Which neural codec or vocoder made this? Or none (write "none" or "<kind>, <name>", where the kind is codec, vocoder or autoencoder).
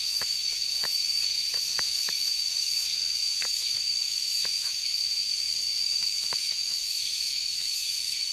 autoencoder, DAC-VAE